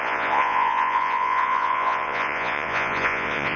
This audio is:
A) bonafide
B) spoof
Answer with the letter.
B